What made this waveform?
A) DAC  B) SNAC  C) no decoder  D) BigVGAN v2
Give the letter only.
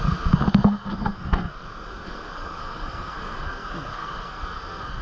B